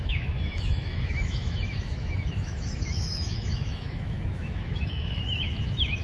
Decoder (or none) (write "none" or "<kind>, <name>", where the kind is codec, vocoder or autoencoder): autoencoder, DAC-VAE